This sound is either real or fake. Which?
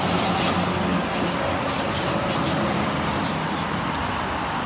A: real